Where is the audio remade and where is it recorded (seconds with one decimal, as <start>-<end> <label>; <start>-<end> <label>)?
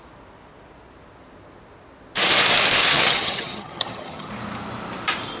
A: 0.0-2.8 recorded; 2.8-4.3 remade; 4.3-5.4 recorded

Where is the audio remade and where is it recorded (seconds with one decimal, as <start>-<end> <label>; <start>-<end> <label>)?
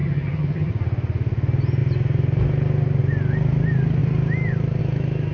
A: 0.0-0.7 remade; 0.7-5.3 recorded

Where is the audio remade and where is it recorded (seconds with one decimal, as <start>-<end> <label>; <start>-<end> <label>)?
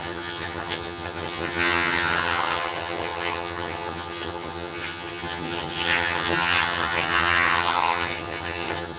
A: 0.0-9.0 remade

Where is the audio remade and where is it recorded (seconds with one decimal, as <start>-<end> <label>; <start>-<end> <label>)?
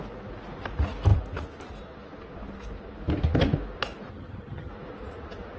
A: 0.0-4.1 recorded; 4.1-4.7 remade; 4.7-5.6 recorded